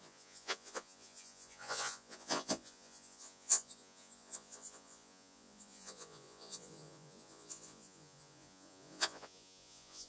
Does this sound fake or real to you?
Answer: fake